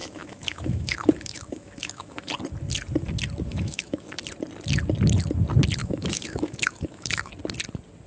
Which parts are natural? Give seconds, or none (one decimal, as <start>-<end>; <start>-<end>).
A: 2.3-3.5; 4.2-5.8; 7.3-8.1